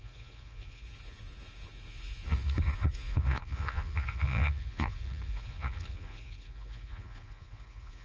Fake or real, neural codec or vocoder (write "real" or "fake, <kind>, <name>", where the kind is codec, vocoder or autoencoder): fake, vocoder, Vocos